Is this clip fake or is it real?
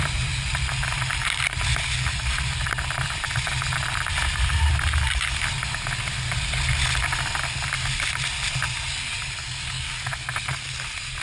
real